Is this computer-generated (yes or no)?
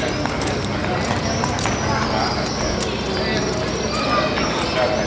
no